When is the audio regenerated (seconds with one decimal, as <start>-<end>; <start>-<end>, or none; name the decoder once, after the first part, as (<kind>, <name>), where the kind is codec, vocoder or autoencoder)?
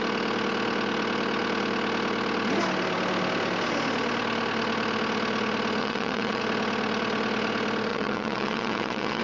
5.8-6.4 (vocoder, WaveNeXt); 7.9-9.2